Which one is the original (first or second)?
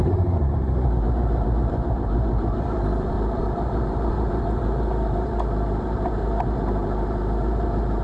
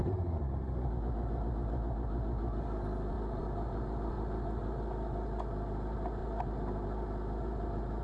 second